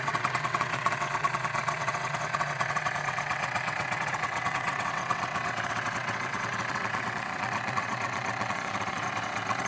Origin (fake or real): fake